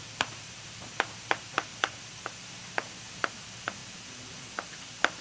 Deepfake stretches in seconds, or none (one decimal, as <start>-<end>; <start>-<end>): 0.0-3.8; 4.4-5.2